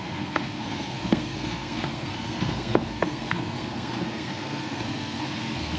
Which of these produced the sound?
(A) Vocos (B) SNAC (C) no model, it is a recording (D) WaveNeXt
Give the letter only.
B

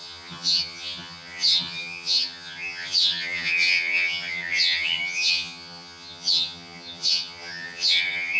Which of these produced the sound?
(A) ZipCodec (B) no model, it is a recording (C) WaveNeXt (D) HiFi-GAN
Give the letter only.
D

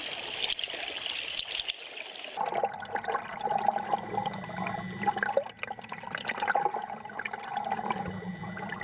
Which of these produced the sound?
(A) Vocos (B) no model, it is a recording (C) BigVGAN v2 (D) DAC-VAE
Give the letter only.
B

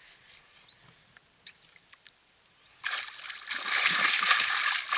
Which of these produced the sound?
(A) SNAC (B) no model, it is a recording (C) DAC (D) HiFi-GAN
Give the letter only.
B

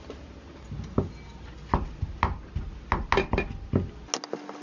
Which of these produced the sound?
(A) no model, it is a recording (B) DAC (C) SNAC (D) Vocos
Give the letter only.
A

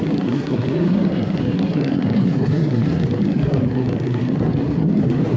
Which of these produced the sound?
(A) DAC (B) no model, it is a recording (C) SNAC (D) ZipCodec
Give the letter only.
C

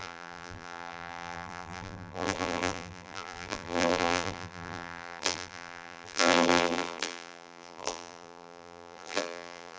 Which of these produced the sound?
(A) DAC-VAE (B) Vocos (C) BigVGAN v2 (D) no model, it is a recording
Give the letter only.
C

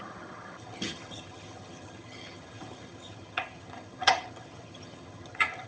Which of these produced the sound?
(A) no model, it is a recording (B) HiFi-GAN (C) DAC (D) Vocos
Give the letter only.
B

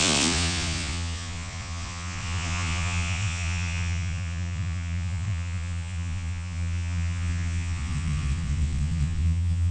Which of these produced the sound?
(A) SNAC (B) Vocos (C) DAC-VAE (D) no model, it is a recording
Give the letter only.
B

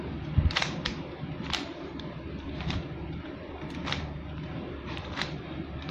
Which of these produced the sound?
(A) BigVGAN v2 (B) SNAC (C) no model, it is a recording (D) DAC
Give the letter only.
A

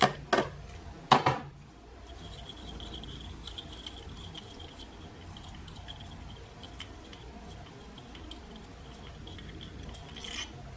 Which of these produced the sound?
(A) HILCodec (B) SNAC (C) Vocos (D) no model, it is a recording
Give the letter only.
D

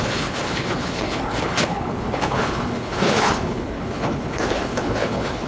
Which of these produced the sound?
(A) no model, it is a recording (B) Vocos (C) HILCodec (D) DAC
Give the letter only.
C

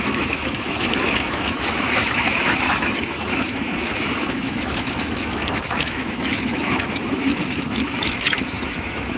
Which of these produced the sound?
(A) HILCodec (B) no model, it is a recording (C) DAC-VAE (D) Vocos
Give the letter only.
C